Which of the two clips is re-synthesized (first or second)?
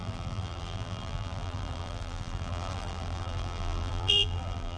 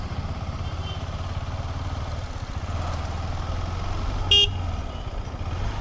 first